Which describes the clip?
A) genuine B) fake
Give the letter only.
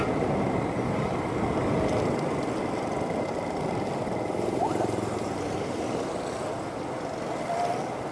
A